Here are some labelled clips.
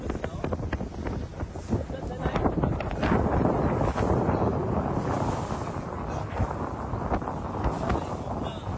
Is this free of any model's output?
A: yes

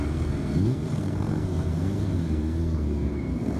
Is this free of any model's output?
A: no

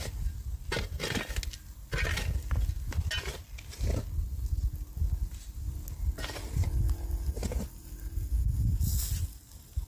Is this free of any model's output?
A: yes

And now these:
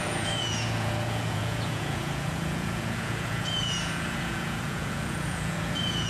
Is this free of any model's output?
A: no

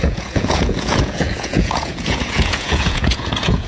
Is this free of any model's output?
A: no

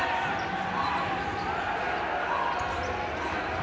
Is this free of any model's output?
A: yes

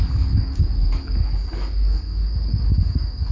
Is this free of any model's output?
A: no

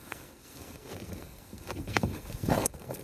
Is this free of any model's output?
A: no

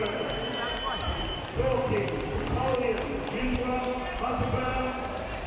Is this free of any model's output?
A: yes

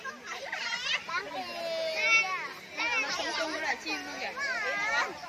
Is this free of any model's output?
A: yes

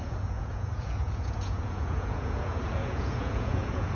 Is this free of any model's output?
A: no